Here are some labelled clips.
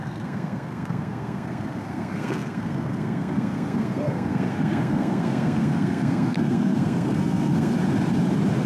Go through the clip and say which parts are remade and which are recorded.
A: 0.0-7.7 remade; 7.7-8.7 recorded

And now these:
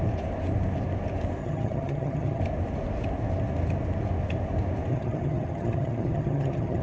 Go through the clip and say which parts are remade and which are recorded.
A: 0.0-1.4 recorded; 1.4-2.4 remade; 2.4-4.9 recorded; 4.9-6.8 remade

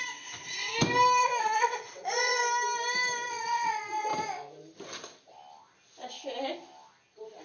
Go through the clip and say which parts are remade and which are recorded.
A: 0.0-0.7 remade; 0.7-1.4 recorded; 1.4-2.4 remade; 2.4-3.3 recorded; 3.3-4.1 remade; 4.1-7.4 recorded

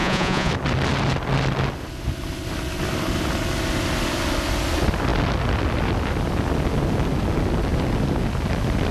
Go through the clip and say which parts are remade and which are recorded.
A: 0.0-0.5 remade; 0.5-8.9 recorded

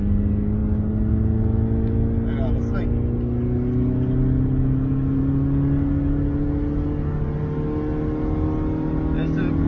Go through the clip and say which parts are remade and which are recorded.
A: 0.0-9.7 recorded

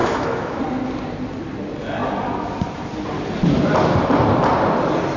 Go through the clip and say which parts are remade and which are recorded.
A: 0.0-0.6 remade; 0.6-5.2 recorded

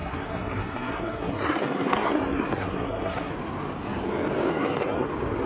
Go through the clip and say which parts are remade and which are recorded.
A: 0.0-3.3 remade; 3.3-4.5 recorded; 4.5-5.1 remade; 5.1-5.5 recorded